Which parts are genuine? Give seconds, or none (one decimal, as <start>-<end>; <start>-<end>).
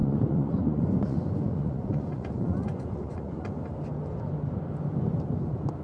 3.5-5.8